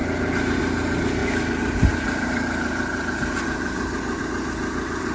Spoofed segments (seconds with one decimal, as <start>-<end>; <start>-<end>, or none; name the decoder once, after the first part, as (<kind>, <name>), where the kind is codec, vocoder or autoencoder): 1.2-4.2 (vocoder, BigVGAN v2)